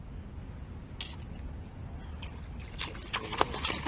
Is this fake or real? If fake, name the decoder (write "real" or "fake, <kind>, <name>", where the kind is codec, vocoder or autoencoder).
real